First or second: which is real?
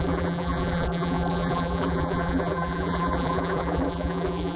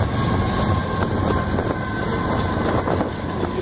second